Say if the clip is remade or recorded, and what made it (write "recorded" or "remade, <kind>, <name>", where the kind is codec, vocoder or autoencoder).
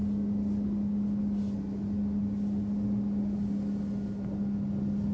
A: recorded